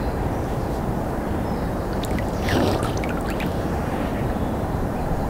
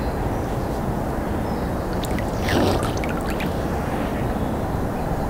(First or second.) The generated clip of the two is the first